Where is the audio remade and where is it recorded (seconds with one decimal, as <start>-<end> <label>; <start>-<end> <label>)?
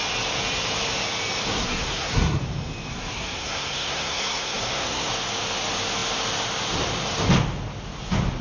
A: 0.0-1.5 recorded; 1.5-2.4 remade; 2.4-2.9 recorded; 2.9-5.1 remade; 5.1-8.4 recorded